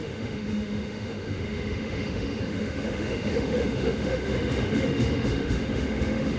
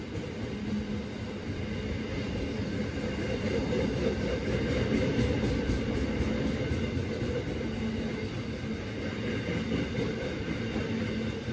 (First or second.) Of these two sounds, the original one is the second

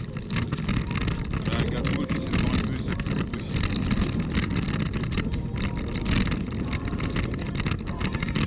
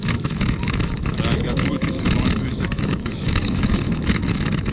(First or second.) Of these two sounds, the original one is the first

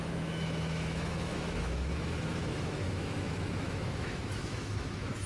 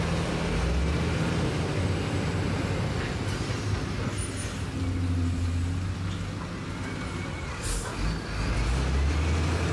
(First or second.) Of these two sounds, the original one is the second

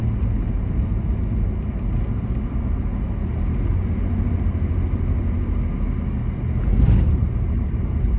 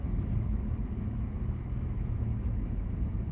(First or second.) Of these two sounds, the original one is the first